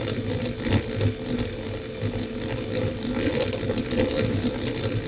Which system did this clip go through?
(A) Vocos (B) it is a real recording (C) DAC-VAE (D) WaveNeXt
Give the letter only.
B